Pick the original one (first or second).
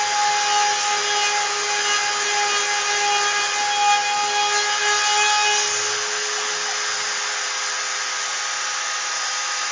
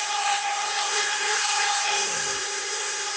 first